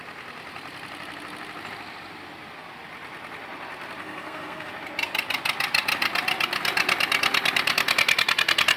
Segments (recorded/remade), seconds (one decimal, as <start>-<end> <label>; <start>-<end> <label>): 0.0-4.0 recorded; 4.0-4.7 remade; 4.7-8.8 recorded